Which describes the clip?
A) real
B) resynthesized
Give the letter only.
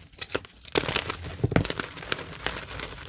A